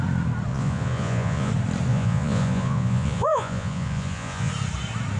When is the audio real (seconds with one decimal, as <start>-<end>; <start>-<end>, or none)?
0.0-0.5; 1.5-1.9; 4.5-5.2